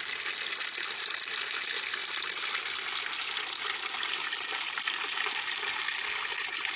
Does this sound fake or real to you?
real